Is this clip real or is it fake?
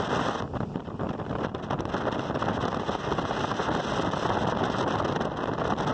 real